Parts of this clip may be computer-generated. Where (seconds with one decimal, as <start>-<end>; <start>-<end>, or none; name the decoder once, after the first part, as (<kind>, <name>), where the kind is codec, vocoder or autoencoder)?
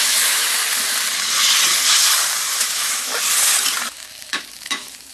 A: 0.0-0.6 (autoencoder, DAC-VAE); 2.6-3.1; 3.9-5.1